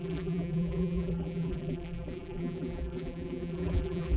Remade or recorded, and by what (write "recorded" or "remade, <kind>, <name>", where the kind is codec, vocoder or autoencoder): remade, vocoder, BigVGAN v2